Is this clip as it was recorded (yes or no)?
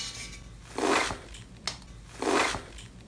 yes